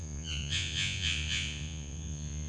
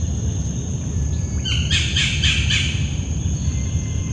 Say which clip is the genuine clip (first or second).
second